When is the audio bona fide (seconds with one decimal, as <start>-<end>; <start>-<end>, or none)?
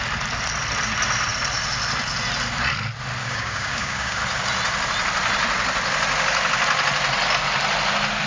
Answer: 0.0-3.2; 4.2-8.3